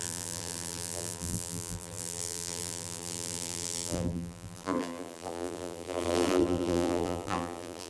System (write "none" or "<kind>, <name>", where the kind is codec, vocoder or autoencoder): vocoder, BigVGAN v2